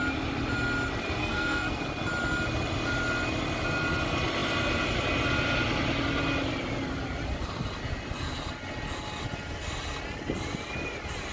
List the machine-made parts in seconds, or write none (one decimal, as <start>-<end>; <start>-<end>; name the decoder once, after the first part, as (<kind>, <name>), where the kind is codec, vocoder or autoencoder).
1.2-1.8 (codec, SNAC)